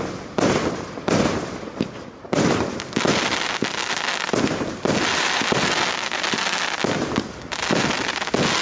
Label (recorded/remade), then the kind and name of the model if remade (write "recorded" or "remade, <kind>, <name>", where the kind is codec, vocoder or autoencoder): recorded